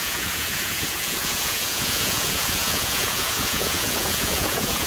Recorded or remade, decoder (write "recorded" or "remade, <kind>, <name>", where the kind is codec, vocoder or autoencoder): remade, vocoder, Vocos